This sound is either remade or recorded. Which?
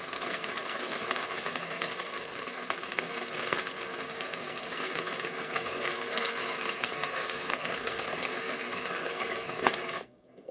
remade